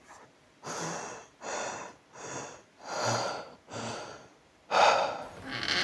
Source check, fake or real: real